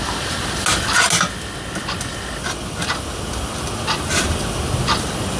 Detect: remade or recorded recorded